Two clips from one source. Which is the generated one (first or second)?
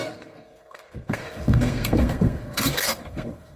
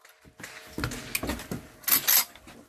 first